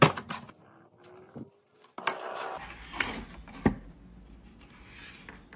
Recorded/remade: recorded